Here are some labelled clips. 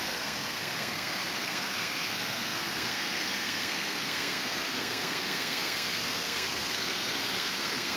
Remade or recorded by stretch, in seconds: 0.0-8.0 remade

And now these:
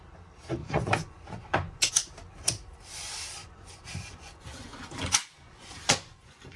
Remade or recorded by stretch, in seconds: 0.0-0.6 recorded; 0.6-1.9 remade; 1.9-3.4 recorded; 3.4-6.6 remade

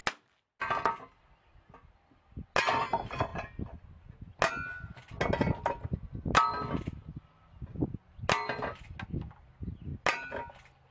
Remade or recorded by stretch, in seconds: 0.0-10.9 recorded

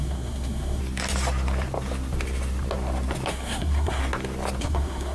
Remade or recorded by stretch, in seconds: 0.0-0.8 remade; 0.8-3.3 recorded; 3.3-4.0 remade; 4.0-4.6 recorded; 4.6-5.1 remade

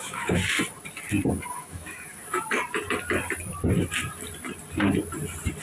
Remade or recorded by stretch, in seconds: 0.0-0.4 remade; 0.4-1.5 recorded; 1.5-2.2 remade; 2.2-5.6 recorded